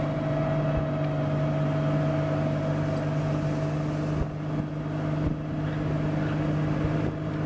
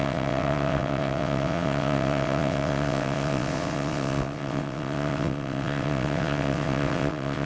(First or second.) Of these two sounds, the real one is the first